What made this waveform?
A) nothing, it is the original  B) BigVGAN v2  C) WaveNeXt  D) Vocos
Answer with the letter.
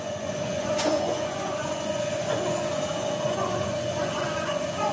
D